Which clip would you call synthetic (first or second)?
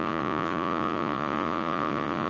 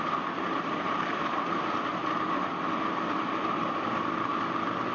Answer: first